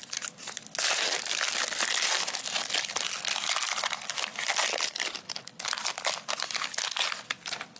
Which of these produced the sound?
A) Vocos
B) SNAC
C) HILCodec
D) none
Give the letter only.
D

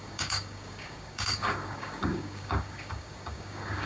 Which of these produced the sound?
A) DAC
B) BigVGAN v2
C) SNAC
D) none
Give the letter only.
A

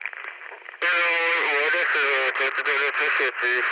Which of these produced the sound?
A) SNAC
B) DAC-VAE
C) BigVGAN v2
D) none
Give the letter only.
D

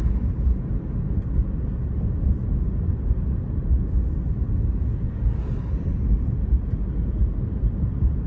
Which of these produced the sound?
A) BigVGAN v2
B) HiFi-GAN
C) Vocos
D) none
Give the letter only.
D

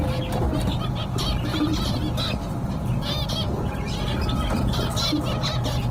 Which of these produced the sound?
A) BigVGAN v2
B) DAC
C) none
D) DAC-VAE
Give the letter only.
C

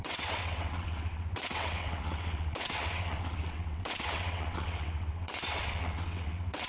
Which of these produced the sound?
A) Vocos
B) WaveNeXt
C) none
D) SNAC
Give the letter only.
B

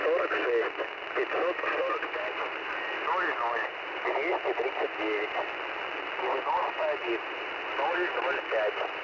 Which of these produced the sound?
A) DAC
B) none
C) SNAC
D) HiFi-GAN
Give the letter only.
B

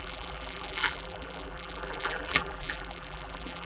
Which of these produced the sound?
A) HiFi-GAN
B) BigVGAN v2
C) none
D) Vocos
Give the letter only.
B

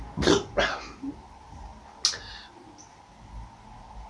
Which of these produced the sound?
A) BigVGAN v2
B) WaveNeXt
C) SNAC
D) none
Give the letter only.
D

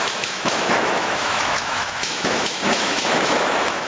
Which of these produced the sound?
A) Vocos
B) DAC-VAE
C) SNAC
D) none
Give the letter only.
B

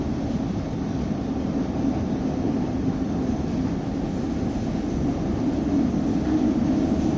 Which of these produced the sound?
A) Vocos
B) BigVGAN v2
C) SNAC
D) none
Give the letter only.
D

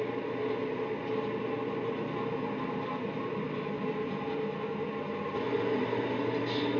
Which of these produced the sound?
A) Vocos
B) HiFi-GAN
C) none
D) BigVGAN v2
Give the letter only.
C